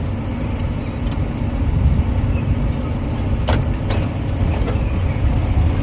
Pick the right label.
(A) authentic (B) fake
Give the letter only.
A